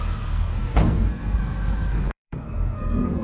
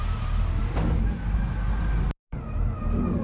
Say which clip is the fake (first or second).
first